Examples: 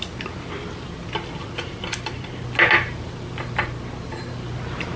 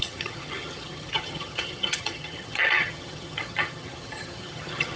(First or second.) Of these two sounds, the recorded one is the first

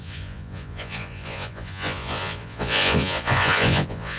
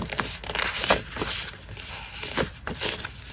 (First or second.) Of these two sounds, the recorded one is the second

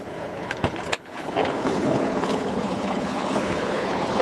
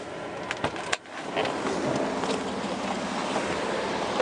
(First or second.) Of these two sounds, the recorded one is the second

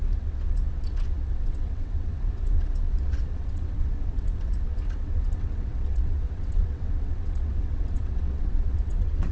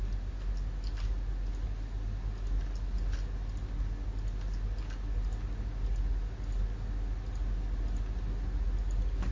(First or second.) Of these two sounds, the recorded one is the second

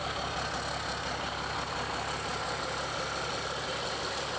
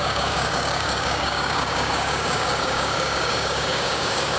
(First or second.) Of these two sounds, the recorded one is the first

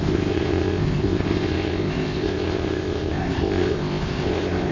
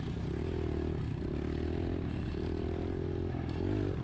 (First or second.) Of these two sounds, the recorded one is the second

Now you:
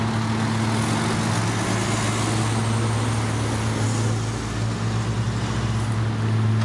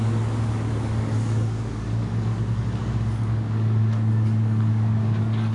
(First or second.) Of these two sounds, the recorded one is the first